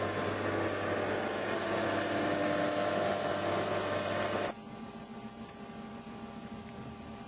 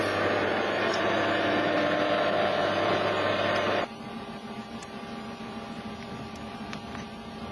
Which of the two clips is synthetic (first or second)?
second